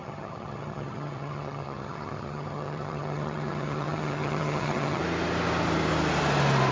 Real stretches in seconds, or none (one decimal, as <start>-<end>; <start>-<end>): 5.0-6.7